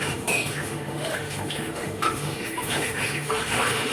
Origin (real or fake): fake